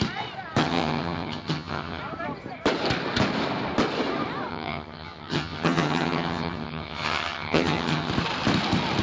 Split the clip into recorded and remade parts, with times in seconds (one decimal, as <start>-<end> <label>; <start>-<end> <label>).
0.0-0.6 recorded; 0.6-2.0 remade; 2.0-4.5 recorded; 4.5-8.1 remade; 8.1-9.0 recorded